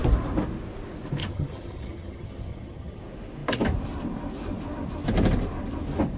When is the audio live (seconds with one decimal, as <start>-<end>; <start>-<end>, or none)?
0.0-1.2; 3.0-6.2